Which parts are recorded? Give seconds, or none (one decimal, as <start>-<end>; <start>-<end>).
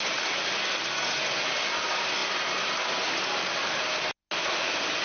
0.0-5.0